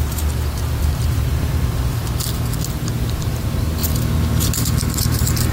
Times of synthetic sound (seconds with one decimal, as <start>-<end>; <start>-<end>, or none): 0.0-2.0; 2.7-3.8; 4.8-5.5